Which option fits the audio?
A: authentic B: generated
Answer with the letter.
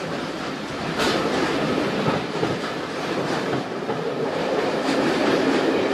B